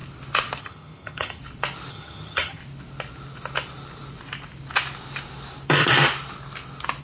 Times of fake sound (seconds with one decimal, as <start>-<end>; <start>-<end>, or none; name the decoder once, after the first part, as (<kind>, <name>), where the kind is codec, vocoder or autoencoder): 0.6-1.4 (vocoder, HiFi-GAN); 1.9-2.6